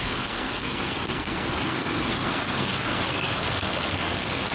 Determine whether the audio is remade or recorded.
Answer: remade